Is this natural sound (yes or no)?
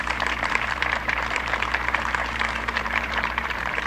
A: no